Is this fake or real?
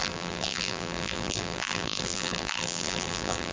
fake